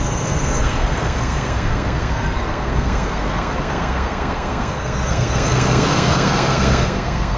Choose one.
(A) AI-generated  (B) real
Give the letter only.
A